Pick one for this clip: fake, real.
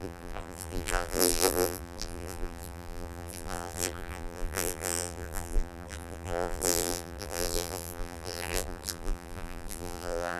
fake